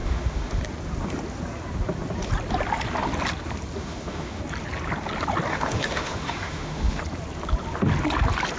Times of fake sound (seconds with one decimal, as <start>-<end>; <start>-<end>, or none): 0.0-0.6; 3.8-4.4; 5.5-7.0